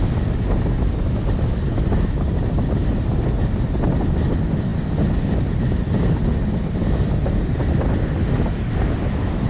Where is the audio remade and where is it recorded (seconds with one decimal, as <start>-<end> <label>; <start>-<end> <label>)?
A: 0.0-9.5 recorded